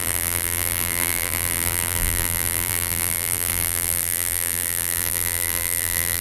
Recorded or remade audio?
remade